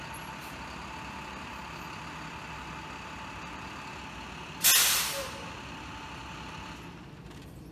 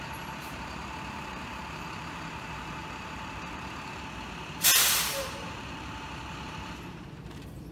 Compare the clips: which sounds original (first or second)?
first